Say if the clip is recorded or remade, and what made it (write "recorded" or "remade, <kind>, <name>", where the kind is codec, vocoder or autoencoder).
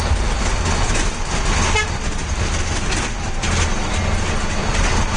recorded